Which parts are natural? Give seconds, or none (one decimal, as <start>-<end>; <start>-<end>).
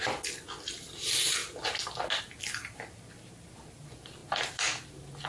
0.0-5.3